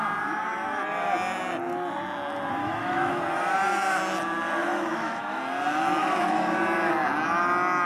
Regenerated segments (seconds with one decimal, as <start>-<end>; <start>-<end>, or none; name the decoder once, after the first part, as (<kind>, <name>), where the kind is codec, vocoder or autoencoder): 2.6-3.2 (autoencoder, DAC-VAE); 4.6-5.4; 6.0-6.6